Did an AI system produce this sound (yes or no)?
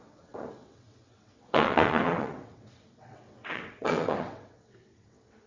yes